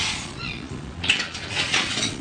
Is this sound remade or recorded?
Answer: remade